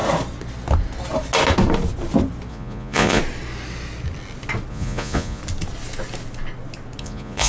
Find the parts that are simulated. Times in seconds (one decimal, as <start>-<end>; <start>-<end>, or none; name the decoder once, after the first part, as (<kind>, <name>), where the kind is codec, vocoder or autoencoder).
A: 2.5-3.2 (vocoder, Vocos); 4.7-5.4; 7.0-7.5